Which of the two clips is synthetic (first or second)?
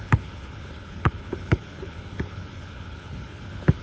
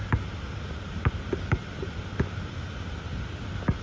first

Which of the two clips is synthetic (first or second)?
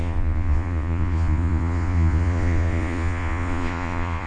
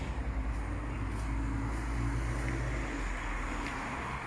first